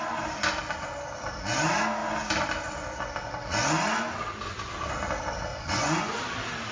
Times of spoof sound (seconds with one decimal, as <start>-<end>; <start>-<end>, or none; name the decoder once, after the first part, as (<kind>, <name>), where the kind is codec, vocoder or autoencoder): 5.5-6.2 (vocoder, Vocos)